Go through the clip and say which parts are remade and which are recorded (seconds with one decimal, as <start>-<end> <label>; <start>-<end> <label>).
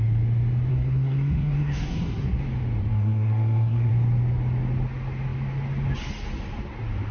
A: 0.0-0.7 recorded; 0.7-2.4 remade; 2.4-2.9 recorded; 2.9-3.9 remade; 3.9-7.1 recorded